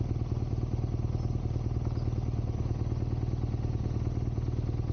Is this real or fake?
real